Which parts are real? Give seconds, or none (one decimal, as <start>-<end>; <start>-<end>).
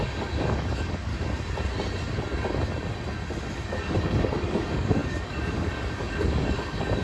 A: 1.1-3.5